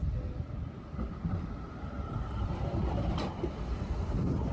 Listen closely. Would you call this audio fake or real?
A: fake